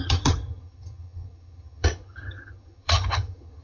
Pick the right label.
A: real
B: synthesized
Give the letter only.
B